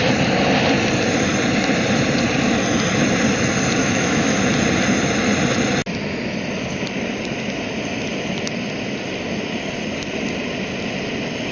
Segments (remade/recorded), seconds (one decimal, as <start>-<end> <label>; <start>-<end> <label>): 0.0-3.8 recorded; 3.8-4.4 remade; 4.4-11.5 recorded